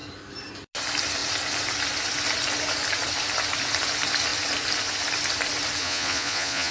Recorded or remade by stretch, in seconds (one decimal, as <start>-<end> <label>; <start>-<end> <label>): 0.0-5.8 recorded; 5.8-6.7 remade